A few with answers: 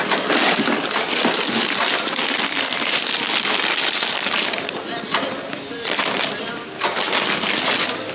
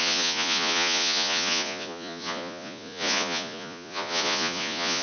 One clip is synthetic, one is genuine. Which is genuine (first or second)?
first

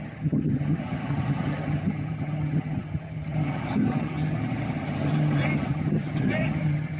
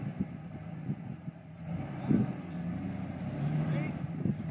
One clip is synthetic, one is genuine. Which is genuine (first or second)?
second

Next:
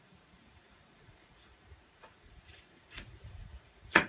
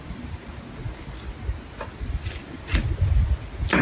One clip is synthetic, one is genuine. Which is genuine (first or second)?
second